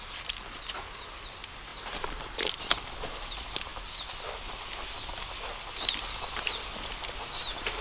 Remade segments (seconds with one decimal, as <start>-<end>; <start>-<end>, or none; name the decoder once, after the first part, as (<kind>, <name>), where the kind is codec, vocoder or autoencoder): none